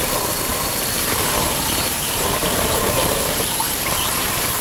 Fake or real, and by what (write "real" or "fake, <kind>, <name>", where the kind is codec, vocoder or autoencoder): fake, vocoder, BigVGAN v2